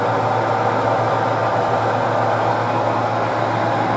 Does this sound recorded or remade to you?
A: recorded